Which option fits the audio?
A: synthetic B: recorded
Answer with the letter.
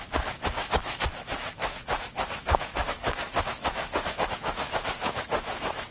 A